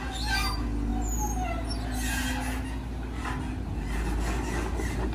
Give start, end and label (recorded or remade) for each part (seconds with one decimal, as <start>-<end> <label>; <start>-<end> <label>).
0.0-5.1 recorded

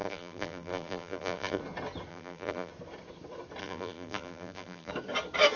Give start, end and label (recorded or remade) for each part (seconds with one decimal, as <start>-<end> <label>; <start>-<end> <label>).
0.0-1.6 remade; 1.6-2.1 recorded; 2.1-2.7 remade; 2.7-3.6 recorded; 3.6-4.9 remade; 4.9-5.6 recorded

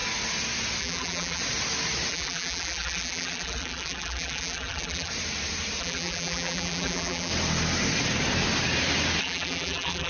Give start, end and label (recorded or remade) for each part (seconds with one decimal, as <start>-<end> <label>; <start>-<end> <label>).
0.0-0.8 recorded; 0.8-1.4 remade; 1.4-2.1 recorded; 2.1-5.1 remade; 5.1-5.8 recorded; 5.8-7.3 remade; 7.3-9.2 recorded; 9.2-10.1 remade